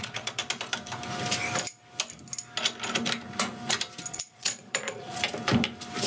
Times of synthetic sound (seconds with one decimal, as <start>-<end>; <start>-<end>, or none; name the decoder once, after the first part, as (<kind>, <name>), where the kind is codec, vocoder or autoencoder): 0.0-0.4 (vocoder, Vocos); 4.1-5.2